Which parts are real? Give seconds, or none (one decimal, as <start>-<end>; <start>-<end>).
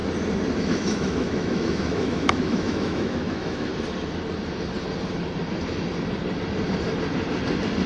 0.0-0.6; 3.7-7.9